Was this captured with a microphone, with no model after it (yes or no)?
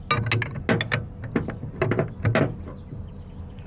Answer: yes